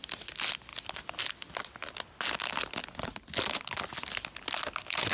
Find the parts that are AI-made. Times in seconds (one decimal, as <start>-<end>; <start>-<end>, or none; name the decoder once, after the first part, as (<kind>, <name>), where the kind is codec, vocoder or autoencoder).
none